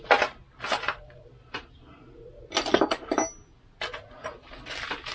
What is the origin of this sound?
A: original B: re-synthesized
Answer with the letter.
A